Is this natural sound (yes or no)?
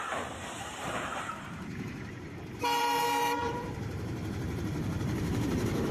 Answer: no